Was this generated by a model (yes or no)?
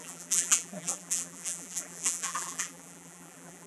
yes